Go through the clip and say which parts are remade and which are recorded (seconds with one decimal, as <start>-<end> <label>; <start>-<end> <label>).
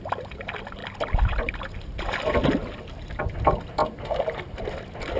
0.0-2.6 recorded; 2.6-3.2 remade; 3.2-5.2 recorded